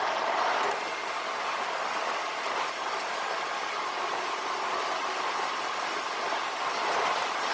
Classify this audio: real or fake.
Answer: real